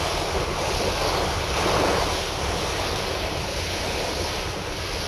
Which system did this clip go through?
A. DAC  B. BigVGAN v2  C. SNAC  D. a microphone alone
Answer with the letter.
D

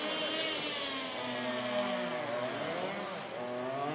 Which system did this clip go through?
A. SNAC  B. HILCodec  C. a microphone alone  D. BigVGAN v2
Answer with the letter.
C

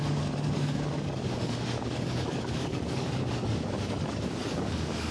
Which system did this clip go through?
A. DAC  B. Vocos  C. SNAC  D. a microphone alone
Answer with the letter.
A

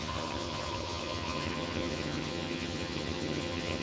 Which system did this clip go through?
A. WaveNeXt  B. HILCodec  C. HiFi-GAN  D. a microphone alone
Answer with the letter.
C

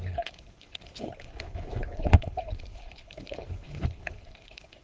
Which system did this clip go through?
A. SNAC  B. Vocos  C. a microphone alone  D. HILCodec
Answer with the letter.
D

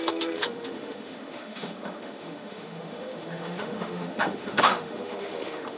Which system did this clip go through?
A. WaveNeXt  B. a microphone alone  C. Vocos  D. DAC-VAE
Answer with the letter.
D